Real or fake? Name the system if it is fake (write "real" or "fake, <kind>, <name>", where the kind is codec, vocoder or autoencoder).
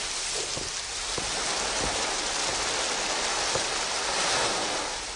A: real